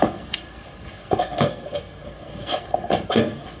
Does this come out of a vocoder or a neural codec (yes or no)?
yes